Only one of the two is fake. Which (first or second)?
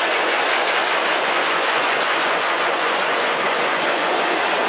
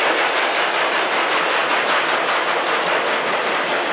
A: first